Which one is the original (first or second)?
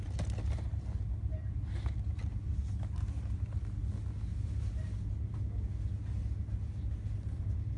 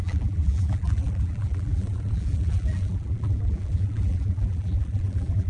first